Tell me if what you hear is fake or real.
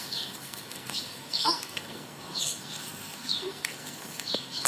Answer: fake